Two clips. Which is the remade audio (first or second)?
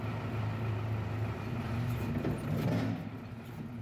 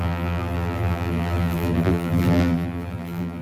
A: second